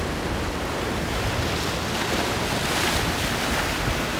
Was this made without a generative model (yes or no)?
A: yes